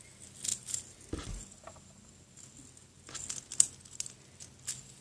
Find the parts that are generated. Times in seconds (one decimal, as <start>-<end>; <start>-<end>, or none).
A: none